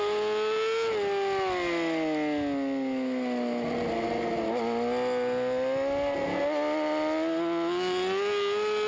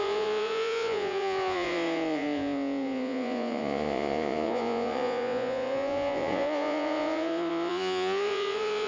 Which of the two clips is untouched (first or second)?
first